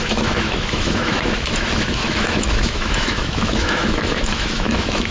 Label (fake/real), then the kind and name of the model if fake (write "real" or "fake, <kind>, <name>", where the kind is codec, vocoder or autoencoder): fake, autoencoder, DAC-VAE